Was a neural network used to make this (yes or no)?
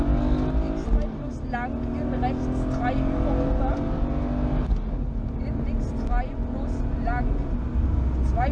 no